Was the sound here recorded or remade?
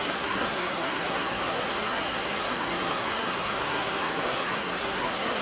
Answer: remade